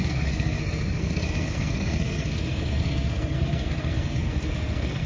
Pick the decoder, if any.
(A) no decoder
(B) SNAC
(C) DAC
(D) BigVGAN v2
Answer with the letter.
B